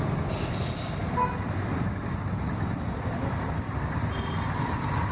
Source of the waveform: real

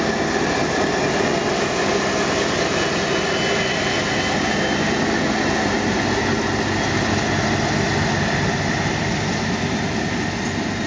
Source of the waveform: real